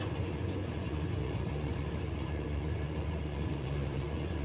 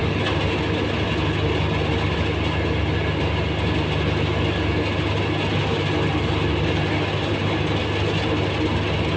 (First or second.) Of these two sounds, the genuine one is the second